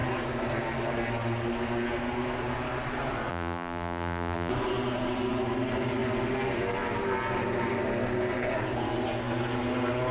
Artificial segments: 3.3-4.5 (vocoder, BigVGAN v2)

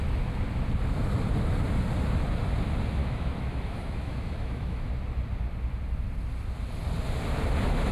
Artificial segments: 3.0-4.9 (autoencoder, DAC-VAE)